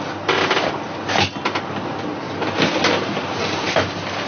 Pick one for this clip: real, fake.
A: real